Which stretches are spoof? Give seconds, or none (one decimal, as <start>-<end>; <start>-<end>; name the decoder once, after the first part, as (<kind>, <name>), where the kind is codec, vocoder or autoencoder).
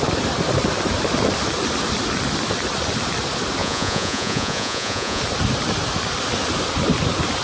3.6-5.2 (vocoder, Vocos)